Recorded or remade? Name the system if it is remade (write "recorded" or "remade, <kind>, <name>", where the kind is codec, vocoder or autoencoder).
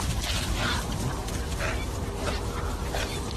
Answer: recorded